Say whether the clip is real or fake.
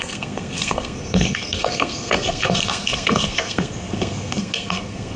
fake